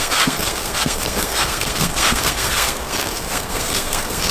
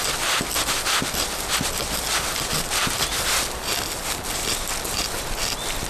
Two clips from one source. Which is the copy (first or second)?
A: first